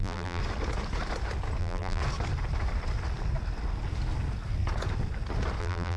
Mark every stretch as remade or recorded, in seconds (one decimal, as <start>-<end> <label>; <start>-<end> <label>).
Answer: 0.0-0.4 remade; 0.4-1.6 recorded; 1.6-2.0 remade; 2.0-5.6 recorded; 5.6-6.0 remade